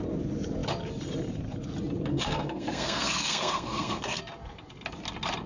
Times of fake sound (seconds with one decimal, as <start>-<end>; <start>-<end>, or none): 2.1-4.2